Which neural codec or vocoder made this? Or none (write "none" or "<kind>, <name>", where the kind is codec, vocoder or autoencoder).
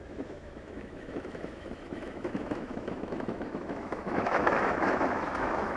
autoencoder, DAC-VAE